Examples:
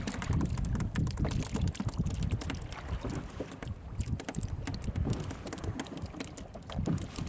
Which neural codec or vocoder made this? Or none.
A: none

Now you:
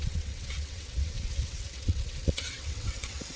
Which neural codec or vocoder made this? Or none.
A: vocoder, WaveNeXt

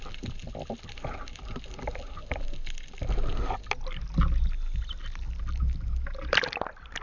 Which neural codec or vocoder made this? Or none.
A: none